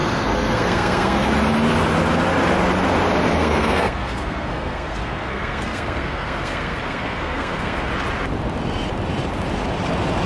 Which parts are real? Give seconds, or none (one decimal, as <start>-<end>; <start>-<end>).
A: 1.3-3.4; 7.9-10.3